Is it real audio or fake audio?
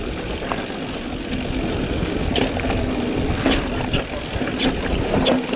real